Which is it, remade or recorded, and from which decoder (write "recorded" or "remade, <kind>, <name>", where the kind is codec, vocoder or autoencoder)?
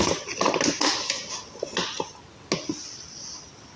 recorded